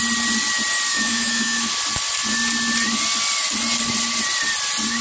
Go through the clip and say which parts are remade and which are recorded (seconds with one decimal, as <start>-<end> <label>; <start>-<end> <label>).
0.0-0.9 recorded; 0.9-1.7 remade; 1.7-5.0 recorded